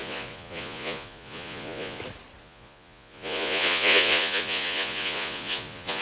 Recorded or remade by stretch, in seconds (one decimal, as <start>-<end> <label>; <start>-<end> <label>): 0.0-2.0 remade; 2.0-2.4 recorded; 2.4-6.0 remade

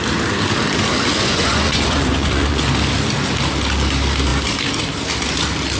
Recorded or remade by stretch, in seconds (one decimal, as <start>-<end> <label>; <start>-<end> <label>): 0.0-1.1 recorded; 1.1-2.7 remade; 2.7-5.8 recorded

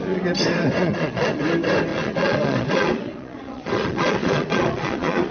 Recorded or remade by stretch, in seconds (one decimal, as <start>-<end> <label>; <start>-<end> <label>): 0.0-0.8 recorded; 0.8-1.4 remade; 1.4-1.9 recorded; 1.9-5.3 remade